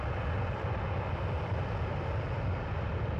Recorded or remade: recorded